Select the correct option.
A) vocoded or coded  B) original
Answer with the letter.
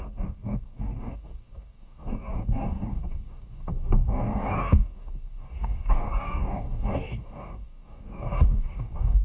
A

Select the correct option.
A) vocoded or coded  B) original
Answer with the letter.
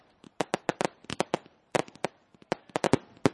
B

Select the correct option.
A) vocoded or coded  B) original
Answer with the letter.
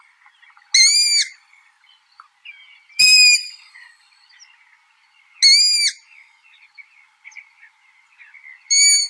B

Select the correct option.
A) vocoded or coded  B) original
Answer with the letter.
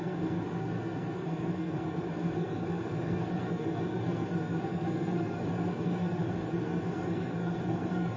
A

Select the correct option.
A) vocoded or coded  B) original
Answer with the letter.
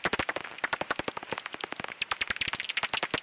B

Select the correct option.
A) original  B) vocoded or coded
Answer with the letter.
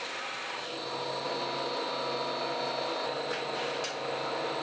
A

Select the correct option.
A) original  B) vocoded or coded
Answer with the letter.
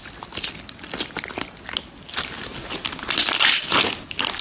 A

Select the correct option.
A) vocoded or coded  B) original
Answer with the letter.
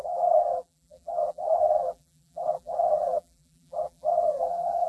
A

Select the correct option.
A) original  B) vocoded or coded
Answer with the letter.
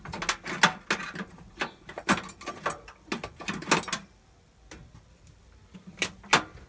A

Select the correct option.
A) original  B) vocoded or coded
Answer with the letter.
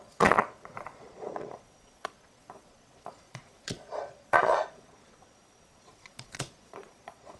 B